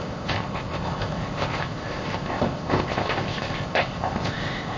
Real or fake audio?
fake